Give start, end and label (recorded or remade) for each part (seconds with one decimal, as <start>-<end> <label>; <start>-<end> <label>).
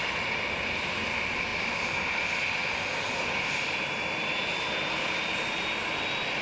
0.0-6.4 recorded